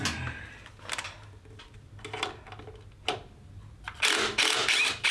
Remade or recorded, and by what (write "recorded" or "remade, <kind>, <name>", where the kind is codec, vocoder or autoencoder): recorded